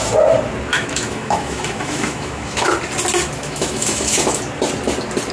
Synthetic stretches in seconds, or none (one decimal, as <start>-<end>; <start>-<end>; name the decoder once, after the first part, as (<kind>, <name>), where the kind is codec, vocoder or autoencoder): 0.7-2.7 (autoencoder, DAC-VAE); 3.4-4.4